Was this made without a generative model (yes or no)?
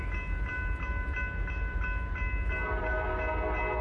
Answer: yes